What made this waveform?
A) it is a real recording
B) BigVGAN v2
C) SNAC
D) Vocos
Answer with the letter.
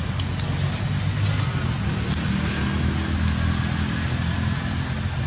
A